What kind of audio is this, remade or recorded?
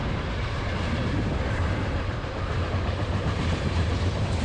remade